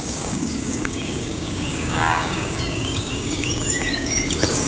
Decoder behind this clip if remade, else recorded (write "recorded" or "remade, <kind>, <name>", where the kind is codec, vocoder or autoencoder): remade, codec, DAC